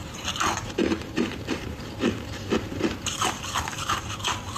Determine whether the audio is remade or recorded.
remade